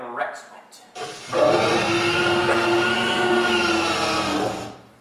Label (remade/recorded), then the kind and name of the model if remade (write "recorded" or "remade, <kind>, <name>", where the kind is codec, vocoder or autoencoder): recorded